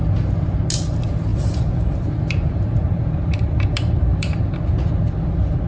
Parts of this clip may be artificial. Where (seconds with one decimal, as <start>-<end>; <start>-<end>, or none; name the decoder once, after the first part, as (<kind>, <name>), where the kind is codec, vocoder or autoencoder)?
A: 1.3-4.7 (vocoder, BigVGAN v2)